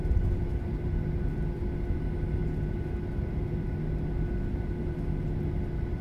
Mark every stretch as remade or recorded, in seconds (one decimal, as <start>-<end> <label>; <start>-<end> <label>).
0.0-6.0 recorded

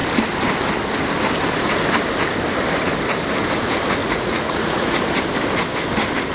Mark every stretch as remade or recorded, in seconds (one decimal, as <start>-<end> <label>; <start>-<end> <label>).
0.0-4.0 recorded; 4.0-5.0 remade; 5.0-6.3 recorded

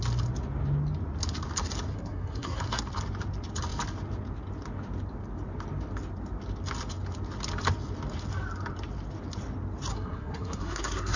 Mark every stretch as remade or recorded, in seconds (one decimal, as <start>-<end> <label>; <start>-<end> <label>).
0.0-1.9 recorded; 1.9-2.8 remade; 2.8-9.9 recorded; 9.9-11.2 remade

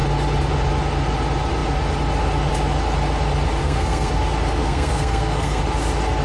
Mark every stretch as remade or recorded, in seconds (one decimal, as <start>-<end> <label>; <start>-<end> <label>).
0.0-3.6 recorded; 3.6-4.1 remade; 4.1-4.6 recorded; 4.6-5.6 remade; 5.6-6.2 recorded

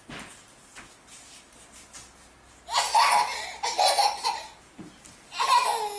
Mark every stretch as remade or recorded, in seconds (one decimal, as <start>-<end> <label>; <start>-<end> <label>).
0.0-6.0 recorded